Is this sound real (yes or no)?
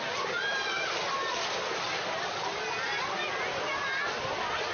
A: yes